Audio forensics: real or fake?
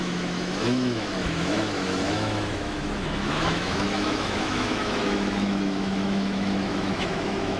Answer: fake